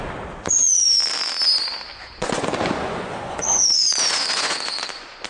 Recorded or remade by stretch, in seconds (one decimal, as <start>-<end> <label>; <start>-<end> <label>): 0.0-1.9 recorded; 1.9-5.3 remade